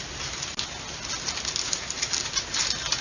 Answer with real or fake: real